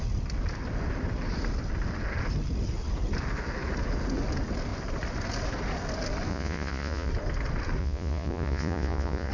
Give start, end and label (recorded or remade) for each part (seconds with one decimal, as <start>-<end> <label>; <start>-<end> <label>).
0.0-6.3 recorded; 6.3-7.1 remade; 7.1-7.8 recorded; 7.8-9.3 remade

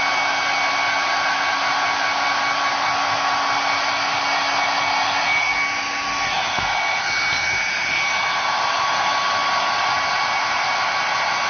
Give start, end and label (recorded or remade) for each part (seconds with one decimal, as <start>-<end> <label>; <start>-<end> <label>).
0.0-11.5 recorded

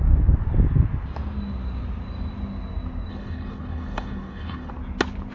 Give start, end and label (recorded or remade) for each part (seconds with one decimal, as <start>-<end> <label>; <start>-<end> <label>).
0.0-3.1 recorded; 3.1-4.7 remade; 4.7-5.3 recorded